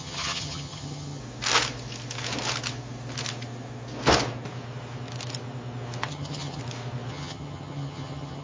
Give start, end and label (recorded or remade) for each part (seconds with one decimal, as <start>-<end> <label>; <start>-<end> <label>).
0.0-1.2 remade; 1.2-6.1 recorded; 6.1-6.6 remade; 6.6-7.1 recorded; 7.1-8.4 remade